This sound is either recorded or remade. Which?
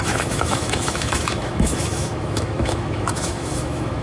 remade